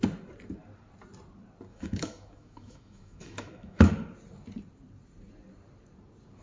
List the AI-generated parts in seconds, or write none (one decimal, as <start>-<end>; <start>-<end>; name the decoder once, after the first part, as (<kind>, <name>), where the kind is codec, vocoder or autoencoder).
1.7-3.9 (autoencoder, DAC-VAE)